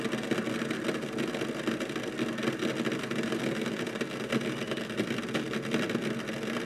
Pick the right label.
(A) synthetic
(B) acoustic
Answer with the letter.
B